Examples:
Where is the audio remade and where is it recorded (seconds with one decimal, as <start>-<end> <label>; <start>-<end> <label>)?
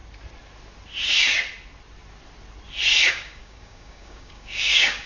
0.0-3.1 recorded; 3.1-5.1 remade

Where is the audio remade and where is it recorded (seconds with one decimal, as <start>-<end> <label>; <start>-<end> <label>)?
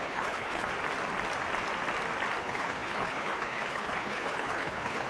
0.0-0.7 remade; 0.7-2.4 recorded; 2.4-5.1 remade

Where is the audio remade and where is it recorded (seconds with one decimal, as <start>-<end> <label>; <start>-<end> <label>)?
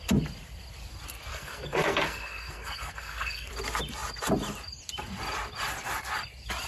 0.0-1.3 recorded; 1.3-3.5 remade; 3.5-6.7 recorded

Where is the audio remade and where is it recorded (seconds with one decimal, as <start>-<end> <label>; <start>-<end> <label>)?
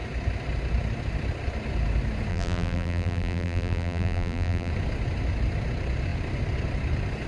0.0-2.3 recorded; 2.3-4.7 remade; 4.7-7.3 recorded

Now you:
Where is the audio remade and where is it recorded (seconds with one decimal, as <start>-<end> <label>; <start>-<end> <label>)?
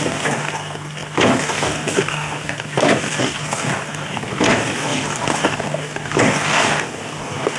0.0-7.6 remade